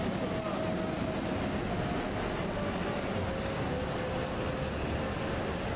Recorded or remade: recorded